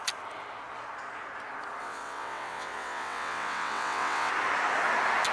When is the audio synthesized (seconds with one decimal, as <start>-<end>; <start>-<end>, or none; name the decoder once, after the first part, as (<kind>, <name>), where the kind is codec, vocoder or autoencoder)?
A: 1.8-4.3 (vocoder, WaveNeXt)